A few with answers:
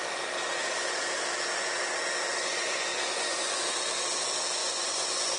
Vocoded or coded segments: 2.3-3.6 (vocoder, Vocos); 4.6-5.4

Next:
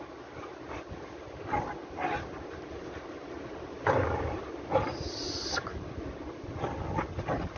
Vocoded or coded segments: 1.8-6.2 (vocoder, BigVGAN v2)

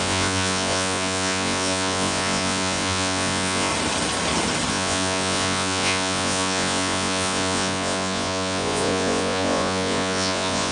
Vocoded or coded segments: 0.0-3.7 (vocoder, Vocos); 4.7-10.7

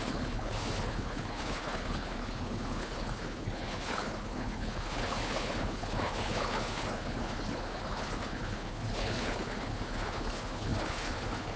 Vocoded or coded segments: 0.0-11.6 (codec, HILCodec)

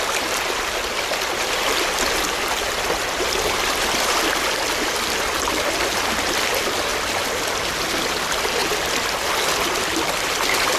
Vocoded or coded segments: 6.9-7.7 (vocoder, BigVGAN v2); 8.6-9.3